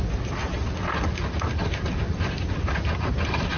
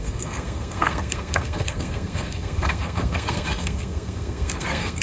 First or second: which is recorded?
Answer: first